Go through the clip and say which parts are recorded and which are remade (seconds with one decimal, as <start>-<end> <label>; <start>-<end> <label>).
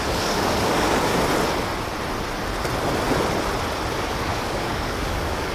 0.0-1.1 remade; 1.1-3.9 recorded; 3.9-5.5 remade